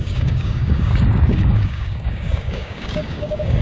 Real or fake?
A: fake